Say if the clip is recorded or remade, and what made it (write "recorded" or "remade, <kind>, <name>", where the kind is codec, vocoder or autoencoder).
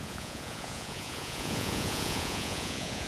remade, vocoder, Vocos